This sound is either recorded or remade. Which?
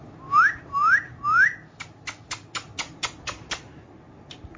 recorded